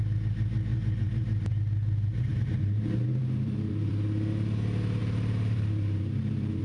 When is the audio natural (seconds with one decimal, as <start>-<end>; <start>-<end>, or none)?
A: 0.0-0.7; 1.5-2.3; 3.9-5.0